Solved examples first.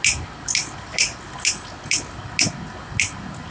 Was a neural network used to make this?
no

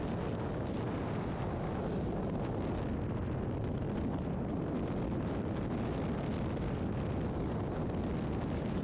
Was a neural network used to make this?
no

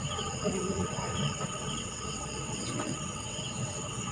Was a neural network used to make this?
yes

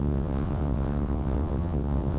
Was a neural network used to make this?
yes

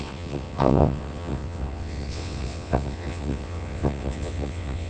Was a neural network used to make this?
yes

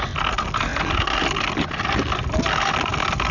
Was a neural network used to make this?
no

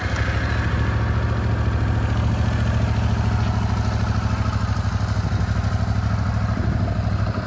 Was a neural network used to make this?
no